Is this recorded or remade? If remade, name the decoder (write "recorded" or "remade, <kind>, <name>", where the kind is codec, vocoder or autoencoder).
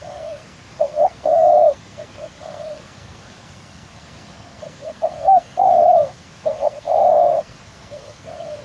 remade, codec, SNAC